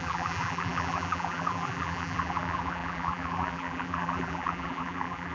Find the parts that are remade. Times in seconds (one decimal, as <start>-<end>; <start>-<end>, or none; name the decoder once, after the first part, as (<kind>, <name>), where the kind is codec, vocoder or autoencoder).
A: 0.0-5.3 (vocoder, BigVGAN v2)